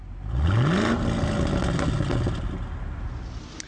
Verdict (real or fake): real